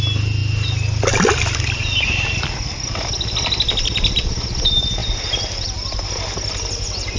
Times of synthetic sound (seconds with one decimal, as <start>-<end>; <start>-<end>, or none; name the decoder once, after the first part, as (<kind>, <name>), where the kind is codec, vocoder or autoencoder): none